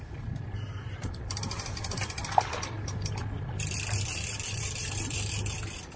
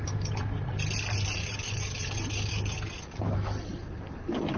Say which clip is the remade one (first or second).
first